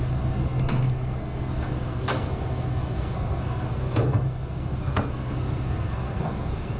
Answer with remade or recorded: remade